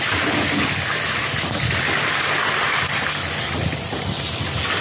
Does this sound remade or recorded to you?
recorded